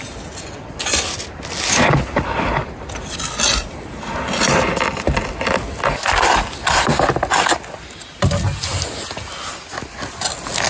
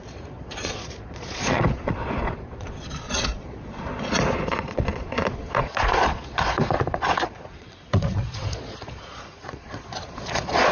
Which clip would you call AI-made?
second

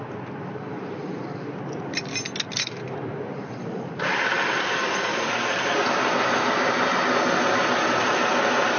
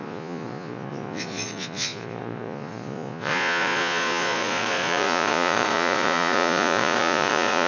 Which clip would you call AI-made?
second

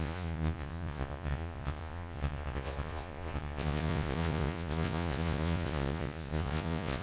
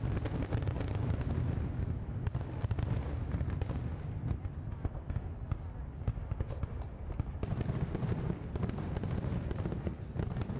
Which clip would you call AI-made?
first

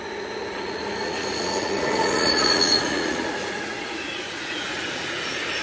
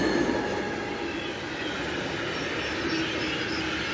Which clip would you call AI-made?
first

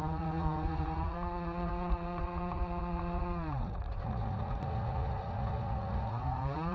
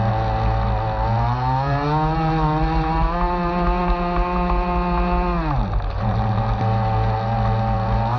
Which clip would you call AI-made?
first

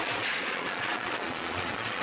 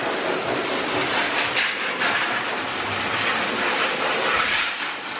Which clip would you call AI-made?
first